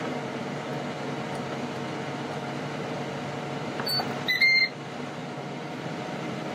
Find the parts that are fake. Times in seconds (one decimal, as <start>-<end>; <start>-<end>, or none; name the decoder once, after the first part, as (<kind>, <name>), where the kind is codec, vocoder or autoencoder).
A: 0.0-5.2 (vocoder, BigVGAN v2); 6.0-6.5